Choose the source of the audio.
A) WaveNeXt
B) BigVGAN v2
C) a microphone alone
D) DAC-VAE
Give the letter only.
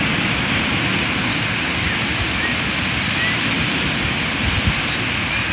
C